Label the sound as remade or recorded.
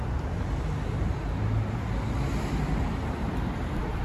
recorded